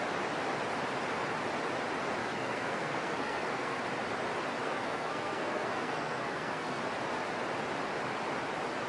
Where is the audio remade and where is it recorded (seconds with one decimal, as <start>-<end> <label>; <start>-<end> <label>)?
0.0-2.2 recorded; 2.2-3.8 remade; 3.8-4.6 recorded; 4.6-6.8 remade; 6.8-8.9 recorded